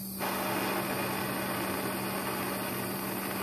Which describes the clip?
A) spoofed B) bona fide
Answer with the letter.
B